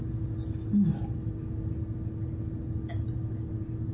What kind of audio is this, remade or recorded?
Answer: recorded